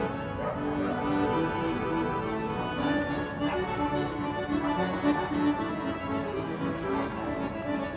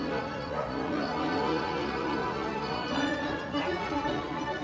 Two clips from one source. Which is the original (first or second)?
first